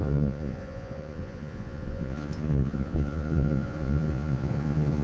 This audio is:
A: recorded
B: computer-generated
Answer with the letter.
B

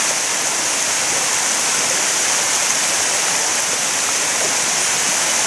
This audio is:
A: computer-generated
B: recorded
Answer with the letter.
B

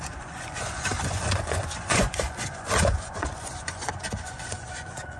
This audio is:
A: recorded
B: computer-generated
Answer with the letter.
B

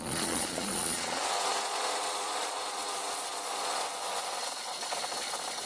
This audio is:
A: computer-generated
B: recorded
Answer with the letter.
A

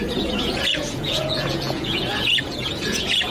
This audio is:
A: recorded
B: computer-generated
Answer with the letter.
B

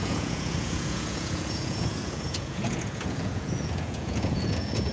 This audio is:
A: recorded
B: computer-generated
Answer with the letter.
B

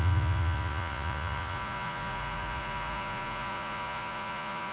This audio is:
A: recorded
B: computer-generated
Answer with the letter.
B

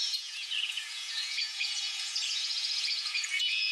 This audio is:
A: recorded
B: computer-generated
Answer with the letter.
B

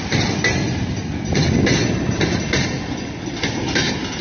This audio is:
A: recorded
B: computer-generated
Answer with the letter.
A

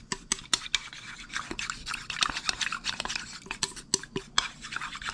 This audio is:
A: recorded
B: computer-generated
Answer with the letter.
A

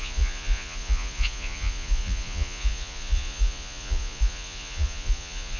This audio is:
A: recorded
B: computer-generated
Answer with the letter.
B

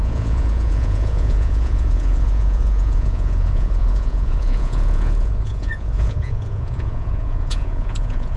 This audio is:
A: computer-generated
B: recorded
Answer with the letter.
A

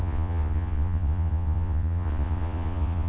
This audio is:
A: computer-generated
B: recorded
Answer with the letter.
A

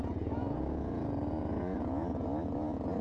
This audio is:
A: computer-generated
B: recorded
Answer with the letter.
A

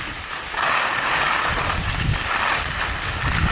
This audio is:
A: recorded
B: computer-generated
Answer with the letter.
A